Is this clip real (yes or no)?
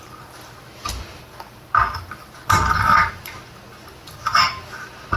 yes